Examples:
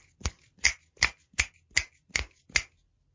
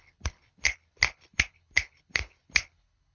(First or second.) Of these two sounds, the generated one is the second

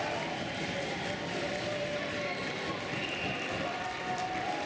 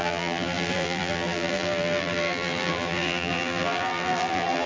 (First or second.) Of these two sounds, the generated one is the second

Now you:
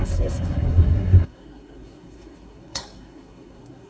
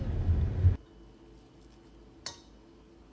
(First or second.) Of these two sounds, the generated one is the first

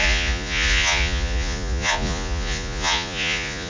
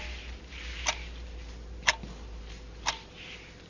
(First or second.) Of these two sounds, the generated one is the first